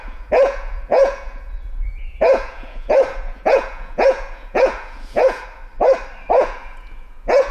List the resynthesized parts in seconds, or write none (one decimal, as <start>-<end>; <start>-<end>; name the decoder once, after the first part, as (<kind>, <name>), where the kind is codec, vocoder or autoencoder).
0.0-5.6 (vocoder, Vocos); 6.3-7.5